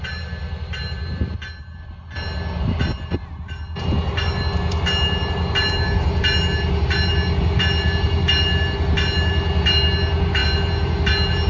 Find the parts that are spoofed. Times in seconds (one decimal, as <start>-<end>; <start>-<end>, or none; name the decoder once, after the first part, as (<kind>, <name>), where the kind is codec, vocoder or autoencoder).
none